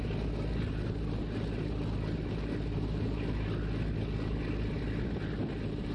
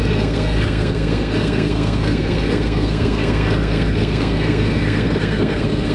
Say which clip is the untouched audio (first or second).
first